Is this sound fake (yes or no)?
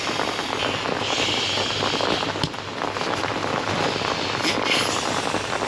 no